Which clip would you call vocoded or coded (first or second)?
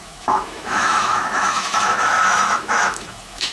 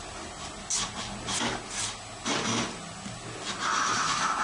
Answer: first